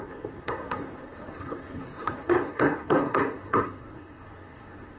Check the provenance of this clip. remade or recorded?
remade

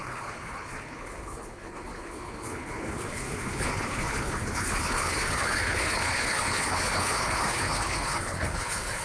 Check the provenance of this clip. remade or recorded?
remade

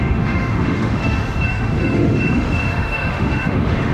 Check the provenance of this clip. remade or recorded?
remade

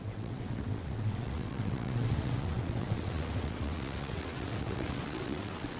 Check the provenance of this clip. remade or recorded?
remade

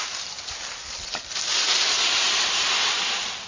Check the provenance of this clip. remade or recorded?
recorded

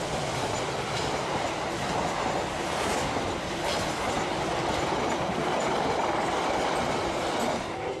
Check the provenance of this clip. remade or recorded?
recorded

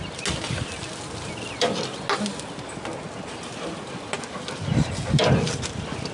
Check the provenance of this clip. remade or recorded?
recorded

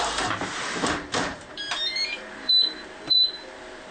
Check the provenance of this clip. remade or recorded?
remade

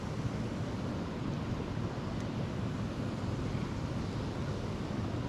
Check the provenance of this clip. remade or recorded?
recorded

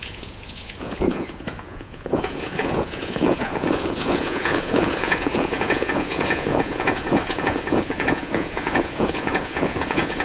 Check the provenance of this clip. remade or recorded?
remade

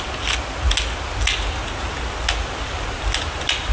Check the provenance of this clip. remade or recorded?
recorded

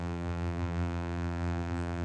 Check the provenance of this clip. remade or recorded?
remade